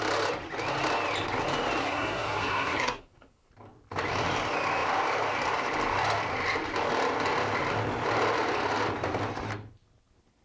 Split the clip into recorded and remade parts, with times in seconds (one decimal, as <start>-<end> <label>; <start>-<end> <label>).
0.0-1.8 recorded; 1.8-3.5 remade; 3.5-10.4 recorded